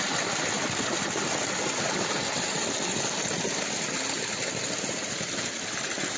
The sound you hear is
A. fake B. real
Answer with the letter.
B